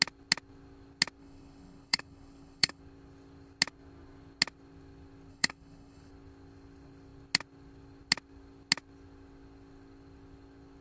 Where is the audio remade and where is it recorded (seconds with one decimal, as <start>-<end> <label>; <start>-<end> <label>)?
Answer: 0.0-1.2 recorded; 1.2-2.8 remade; 2.8-5.3 recorded; 5.3-6.1 remade; 6.1-10.8 recorded